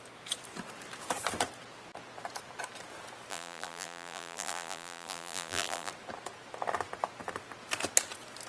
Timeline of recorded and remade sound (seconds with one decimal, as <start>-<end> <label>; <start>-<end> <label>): 0.0-3.3 recorded; 3.3-5.9 remade; 5.9-8.5 recorded